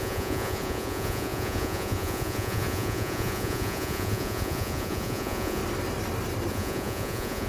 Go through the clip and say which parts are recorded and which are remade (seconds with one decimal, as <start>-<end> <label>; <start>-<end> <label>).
0.0-5.6 remade; 5.6-6.5 recorded; 6.5-7.5 remade